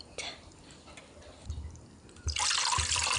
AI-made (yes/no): no